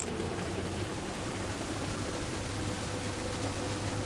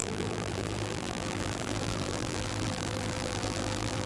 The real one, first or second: first